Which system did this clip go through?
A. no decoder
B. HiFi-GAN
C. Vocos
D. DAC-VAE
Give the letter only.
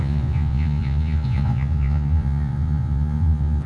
C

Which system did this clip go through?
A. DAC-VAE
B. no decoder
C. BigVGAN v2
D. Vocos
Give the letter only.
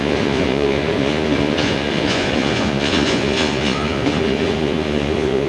D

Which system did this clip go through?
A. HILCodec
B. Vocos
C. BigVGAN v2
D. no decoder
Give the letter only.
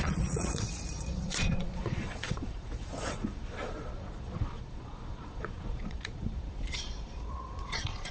B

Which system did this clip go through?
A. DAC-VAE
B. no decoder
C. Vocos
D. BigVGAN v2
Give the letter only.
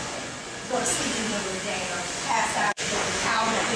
C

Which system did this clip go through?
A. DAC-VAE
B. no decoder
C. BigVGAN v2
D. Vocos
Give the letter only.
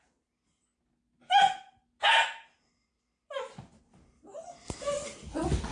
B